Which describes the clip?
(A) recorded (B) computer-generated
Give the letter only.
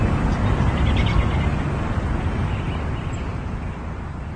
A